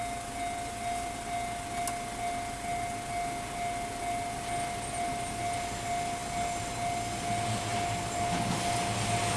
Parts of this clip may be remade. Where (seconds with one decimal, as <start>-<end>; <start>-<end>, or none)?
none